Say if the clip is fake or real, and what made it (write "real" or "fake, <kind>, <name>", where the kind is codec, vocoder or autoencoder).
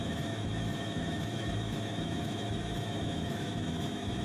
fake, autoencoder, DAC-VAE